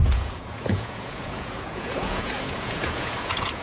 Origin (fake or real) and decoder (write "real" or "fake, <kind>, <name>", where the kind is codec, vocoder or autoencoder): fake, vocoder, Vocos